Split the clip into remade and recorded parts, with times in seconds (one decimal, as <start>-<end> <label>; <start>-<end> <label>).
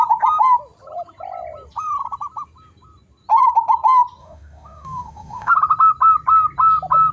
0.0-4.2 recorded; 4.2-5.5 remade; 5.5-7.1 recorded